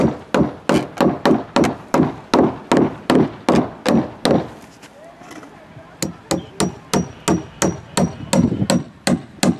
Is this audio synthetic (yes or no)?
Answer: no